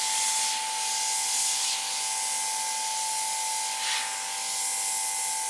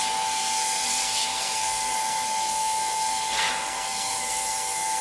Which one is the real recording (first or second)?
first